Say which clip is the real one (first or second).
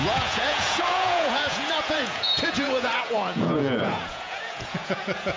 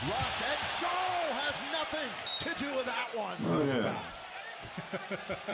second